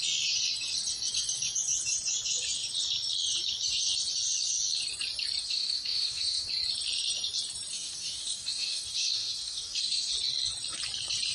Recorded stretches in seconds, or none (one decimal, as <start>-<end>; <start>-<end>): 0.0-5.4; 6.5-7.7; 10.1-11.3